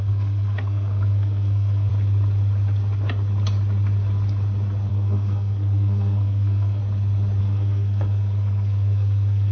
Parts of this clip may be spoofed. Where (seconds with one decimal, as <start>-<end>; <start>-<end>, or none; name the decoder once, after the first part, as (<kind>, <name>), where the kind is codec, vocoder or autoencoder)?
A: 0.0-1.9 (codec, SNAC); 4.9-6.8; 7.4-9.5